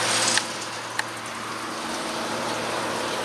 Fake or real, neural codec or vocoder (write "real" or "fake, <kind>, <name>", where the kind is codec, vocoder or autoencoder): real